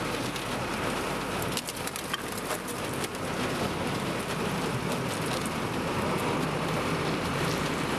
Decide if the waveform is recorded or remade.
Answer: recorded